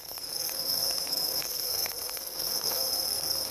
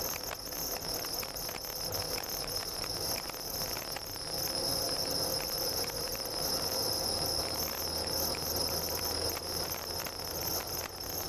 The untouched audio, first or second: second